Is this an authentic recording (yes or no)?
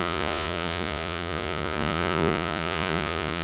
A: no